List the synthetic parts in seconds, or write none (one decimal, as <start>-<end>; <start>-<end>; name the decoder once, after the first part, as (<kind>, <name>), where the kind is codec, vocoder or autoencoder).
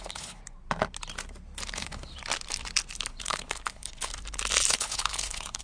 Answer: 0.0-0.4 (codec, HILCodec); 1.7-2.1; 3.1-4.1; 4.7-5.6